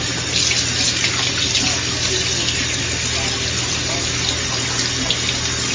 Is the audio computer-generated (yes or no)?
no